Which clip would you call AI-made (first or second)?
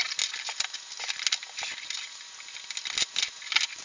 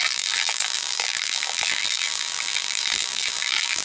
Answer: second